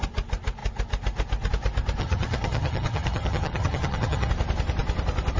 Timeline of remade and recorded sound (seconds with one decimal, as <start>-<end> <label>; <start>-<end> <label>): 0.0-2.0 recorded; 2.0-4.3 remade; 4.3-5.4 recorded